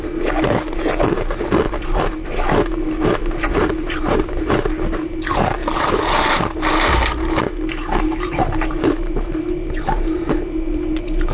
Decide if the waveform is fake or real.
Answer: fake